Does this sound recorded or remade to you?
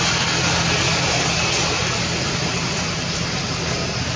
recorded